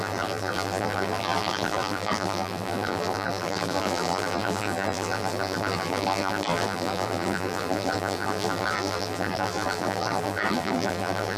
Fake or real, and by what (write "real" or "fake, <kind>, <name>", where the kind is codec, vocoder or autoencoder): fake, vocoder, BigVGAN v2